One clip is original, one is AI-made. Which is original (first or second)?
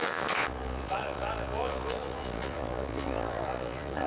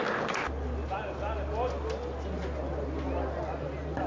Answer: second